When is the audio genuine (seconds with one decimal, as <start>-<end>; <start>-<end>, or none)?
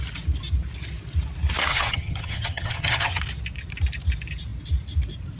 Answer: 0.0-1.7; 3.2-5.4